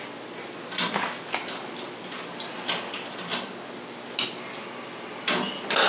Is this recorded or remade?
recorded